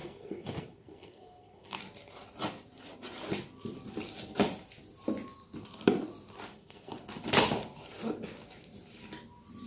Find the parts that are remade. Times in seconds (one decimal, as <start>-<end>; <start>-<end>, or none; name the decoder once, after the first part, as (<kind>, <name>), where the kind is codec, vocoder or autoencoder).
0.0-1.8 (codec, SNAC); 6.5-7.0